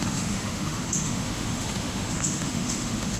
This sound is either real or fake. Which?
fake